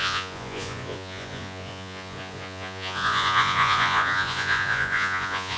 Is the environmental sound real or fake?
fake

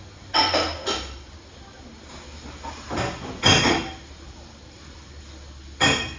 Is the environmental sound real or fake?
real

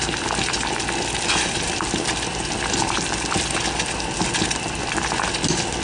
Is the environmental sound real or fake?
real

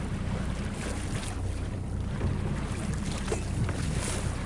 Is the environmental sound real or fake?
real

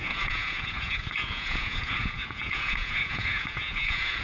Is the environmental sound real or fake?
fake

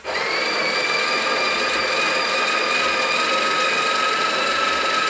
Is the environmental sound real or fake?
real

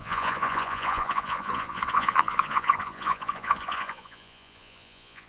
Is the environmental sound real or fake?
fake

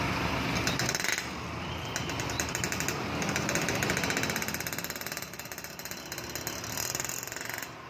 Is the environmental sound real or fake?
real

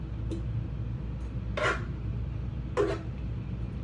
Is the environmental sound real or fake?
real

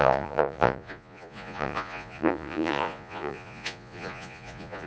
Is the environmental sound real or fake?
fake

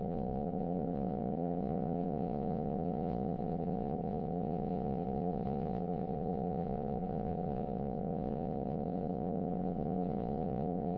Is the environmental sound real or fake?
fake